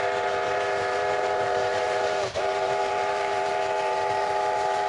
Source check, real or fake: fake